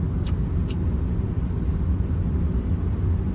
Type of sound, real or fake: real